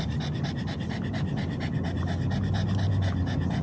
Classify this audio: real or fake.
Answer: real